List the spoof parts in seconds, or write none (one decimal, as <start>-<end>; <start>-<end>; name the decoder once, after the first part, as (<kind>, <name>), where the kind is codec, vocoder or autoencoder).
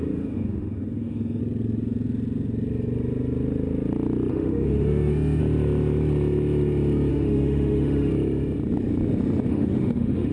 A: 0.0-1.4 (autoencoder, DAC-VAE); 4.3-5.4; 7.1-8.1; 9.5-10.3